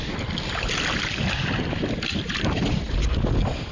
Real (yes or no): yes